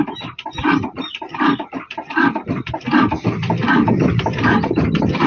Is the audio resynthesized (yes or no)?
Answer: yes